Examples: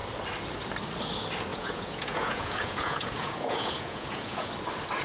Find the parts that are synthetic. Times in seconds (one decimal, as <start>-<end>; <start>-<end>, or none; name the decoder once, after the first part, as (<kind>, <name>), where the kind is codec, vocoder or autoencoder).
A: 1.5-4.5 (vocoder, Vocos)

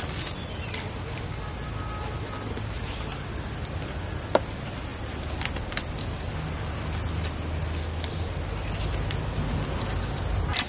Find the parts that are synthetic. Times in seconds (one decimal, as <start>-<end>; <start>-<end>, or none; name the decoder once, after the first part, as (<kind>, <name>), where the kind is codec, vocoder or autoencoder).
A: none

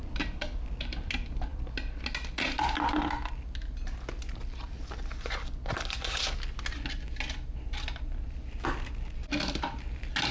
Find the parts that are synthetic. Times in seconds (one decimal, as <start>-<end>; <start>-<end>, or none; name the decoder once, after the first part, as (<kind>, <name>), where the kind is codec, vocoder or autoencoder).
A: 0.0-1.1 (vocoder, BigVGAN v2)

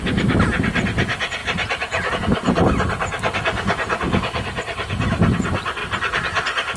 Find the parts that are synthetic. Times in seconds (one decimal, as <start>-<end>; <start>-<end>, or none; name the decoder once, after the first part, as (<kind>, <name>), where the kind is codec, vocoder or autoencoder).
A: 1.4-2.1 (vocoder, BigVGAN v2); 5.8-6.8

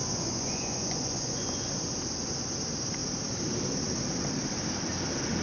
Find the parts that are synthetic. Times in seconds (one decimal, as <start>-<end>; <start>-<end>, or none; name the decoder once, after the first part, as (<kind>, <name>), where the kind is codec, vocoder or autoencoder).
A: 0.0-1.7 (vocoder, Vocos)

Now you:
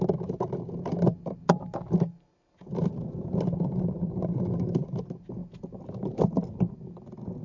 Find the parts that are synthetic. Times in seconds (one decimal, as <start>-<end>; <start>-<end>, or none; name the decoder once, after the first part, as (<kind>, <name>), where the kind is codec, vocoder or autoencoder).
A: none